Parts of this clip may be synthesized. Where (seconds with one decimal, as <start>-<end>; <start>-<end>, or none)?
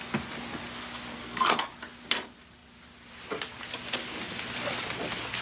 1.1-1.7